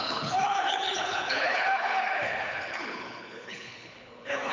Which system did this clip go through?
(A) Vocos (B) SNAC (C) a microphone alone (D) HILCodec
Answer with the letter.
D